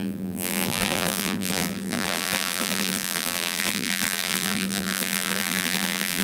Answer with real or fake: fake